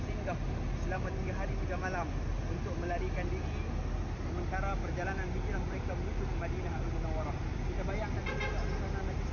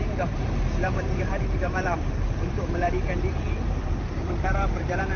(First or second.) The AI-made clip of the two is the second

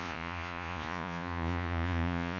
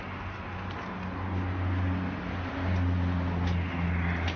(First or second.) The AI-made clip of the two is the first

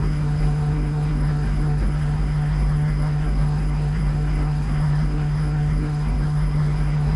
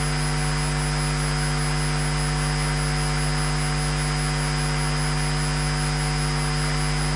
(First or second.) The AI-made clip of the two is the first